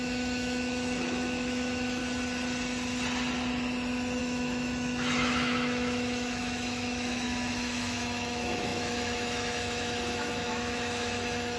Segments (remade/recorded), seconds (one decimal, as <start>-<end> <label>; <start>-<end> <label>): 0.0-2.0 remade; 2.0-4.2 recorded; 4.2-11.6 remade